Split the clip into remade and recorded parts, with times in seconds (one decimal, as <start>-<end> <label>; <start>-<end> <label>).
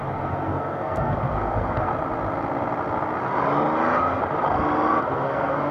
0.0-1.9 remade; 1.9-5.0 recorded; 5.0-5.7 remade